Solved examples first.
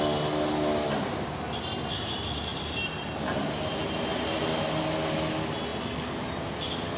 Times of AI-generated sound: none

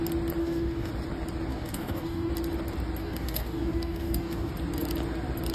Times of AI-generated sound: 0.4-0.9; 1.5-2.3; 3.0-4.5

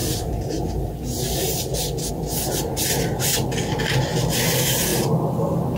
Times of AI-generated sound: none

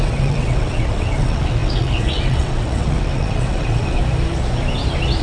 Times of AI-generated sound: 0.0-4.0

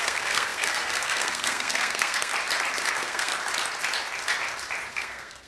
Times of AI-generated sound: 0.0-2.3; 2.9-3.3; 4.9-5.5

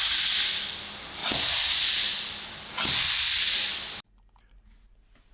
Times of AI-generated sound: none

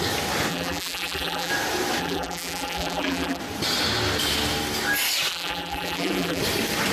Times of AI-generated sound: 0.5-1.5; 2.0-3.4; 5.3-6.4

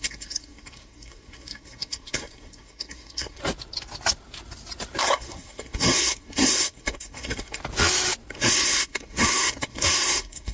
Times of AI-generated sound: 0.0-3.4; 5.0-7.6; 8.3-10.5